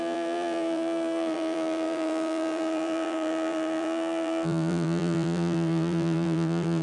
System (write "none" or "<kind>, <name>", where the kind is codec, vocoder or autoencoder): vocoder, BigVGAN v2